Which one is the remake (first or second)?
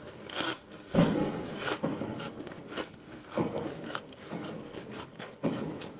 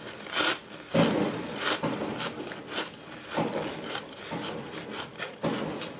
first